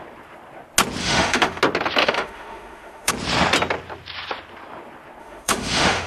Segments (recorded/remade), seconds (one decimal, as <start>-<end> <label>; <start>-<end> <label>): 0.0-1.0 recorded; 1.0-1.6 remade; 1.6-2.0 recorded; 2.0-3.1 remade; 3.1-5.2 recorded; 5.2-6.1 remade